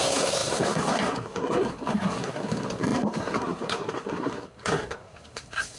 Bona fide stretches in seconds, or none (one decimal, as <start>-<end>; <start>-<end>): none